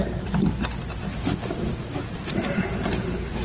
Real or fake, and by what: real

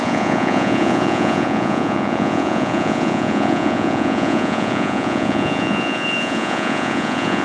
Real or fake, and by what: fake, vocoder, Vocos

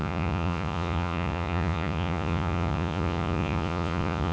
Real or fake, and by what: fake, vocoder, Vocos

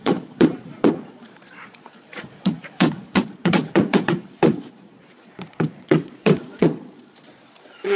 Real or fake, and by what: fake, vocoder, Vocos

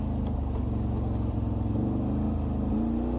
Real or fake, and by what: real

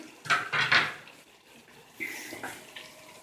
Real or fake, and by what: real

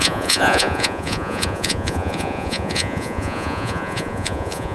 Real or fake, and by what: fake, vocoder, Vocos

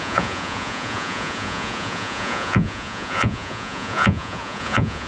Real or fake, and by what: fake, vocoder, Vocos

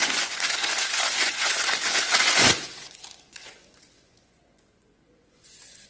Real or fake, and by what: fake, vocoder, Vocos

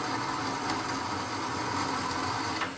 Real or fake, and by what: real